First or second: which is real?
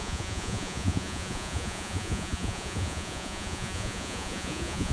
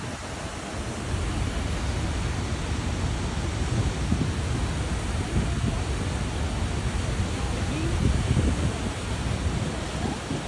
second